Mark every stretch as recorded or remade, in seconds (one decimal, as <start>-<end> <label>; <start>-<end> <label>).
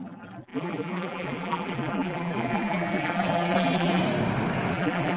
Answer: 0.0-4.0 remade; 4.0-4.7 recorded; 4.7-5.2 remade